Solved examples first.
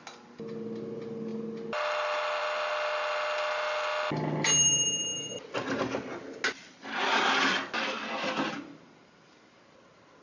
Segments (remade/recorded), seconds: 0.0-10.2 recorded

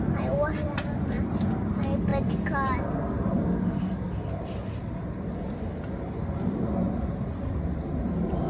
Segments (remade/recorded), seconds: 0.0-8.5 recorded